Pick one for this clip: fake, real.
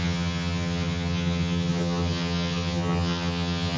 fake